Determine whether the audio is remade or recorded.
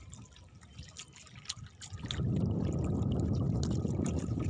recorded